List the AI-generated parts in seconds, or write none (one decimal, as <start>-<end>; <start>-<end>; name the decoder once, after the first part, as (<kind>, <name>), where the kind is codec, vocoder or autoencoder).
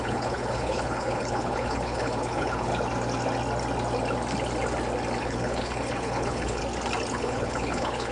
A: 0.0-2.7 (codec, HILCodec); 5.2-6.6; 7.1-8.1